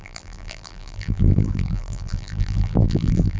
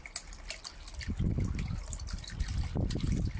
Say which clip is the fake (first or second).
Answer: first